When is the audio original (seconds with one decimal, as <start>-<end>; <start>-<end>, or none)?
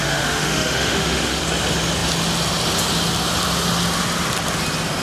1.4-5.0